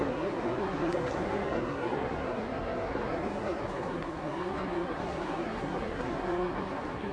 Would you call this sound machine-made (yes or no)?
yes